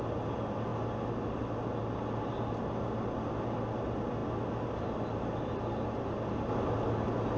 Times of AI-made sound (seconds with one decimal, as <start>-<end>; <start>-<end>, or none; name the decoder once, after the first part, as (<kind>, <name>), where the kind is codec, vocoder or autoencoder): none